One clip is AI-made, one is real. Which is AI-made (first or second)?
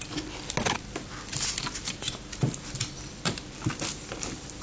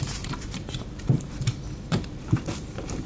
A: second